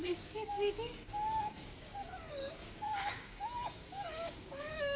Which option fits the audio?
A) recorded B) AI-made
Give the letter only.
B